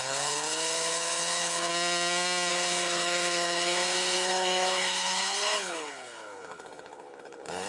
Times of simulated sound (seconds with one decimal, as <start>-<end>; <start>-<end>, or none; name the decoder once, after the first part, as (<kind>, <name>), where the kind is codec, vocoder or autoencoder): 0.0-1.7 (codec, HILCodec); 2.5-7.7